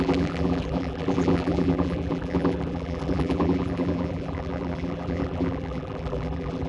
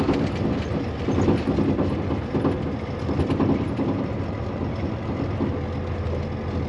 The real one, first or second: second